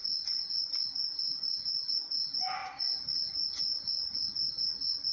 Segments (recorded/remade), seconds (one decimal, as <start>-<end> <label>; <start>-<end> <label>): 0.0-1.9 remade; 1.9-2.6 recorded; 2.6-4.3 remade; 4.3-5.1 recorded